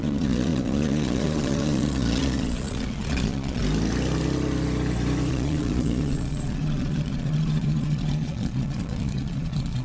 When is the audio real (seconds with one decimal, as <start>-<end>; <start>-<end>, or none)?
3.6-5.3